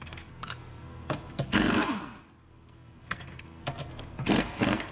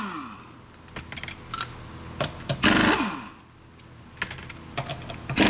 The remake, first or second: first